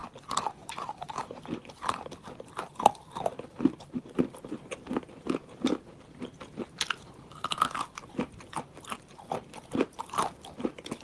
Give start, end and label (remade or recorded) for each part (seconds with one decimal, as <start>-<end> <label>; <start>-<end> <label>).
0.0-4.1 remade; 4.1-11.0 recorded